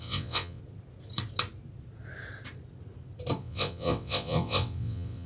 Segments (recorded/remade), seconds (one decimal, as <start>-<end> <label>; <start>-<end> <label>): 0.0-0.6 remade; 0.6-3.4 recorded; 3.4-5.3 remade